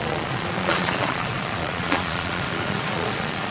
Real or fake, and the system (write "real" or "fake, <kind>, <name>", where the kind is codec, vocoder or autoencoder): fake, vocoder, Vocos